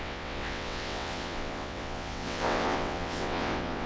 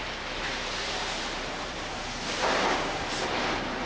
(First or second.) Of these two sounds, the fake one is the first